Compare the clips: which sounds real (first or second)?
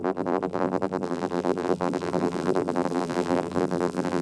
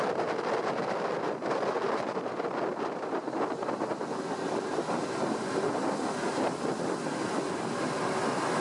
second